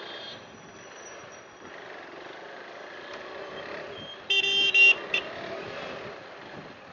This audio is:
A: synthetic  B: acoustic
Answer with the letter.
B